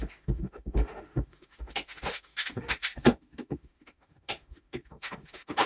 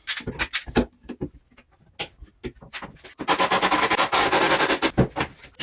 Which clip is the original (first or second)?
second